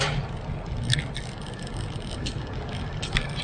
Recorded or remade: recorded